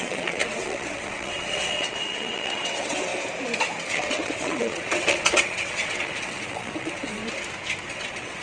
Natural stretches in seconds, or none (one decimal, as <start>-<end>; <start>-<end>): 3.1-3.9; 7.2-7.9